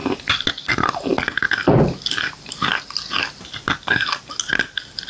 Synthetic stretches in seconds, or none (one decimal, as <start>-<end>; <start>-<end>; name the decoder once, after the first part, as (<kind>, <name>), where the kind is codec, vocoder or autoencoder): none